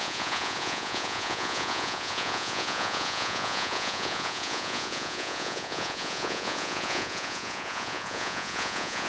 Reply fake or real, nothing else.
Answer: fake